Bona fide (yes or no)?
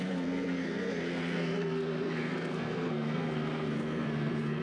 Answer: no